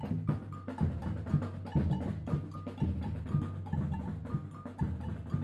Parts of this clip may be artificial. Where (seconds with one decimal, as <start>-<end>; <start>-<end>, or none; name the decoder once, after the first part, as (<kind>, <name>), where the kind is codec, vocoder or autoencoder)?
none